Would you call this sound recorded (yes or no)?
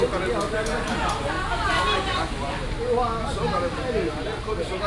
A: yes